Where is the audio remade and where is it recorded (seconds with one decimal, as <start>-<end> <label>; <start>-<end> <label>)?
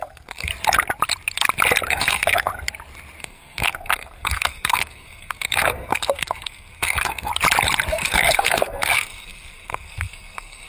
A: 0.0-0.5 remade; 0.5-1.9 recorded; 1.9-2.5 remade; 2.5-3.2 recorded; 3.2-7.3 remade; 7.3-7.9 recorded; 7.9-10.7 remade